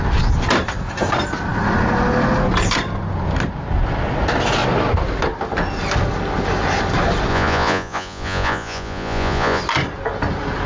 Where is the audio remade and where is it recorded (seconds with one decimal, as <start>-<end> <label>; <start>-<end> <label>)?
0.0-7.3 recorded; 7.3-9.6 remade; 9.6-10.7 recorded